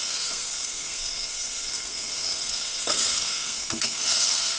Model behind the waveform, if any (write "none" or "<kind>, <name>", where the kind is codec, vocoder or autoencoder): codec, SNAC